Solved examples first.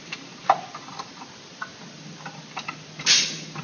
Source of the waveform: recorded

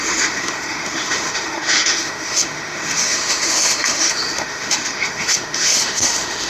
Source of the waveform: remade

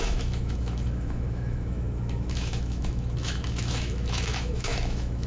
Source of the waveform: remade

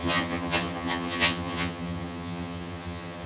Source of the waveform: remade